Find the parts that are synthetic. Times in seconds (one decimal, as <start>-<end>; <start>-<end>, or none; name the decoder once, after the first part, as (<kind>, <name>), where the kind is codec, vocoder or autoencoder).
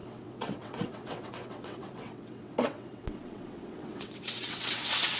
0.0-5.2 (vocoder, WaveNeXt)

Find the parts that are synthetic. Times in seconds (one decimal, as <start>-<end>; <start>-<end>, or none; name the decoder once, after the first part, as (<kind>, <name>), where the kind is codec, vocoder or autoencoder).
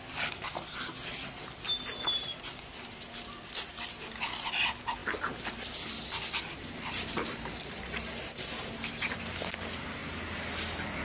none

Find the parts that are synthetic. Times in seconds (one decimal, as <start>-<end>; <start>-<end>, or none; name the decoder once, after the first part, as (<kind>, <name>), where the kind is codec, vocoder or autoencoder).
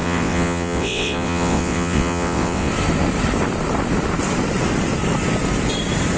0.0-2.7 (vocoder, WaveNeXt)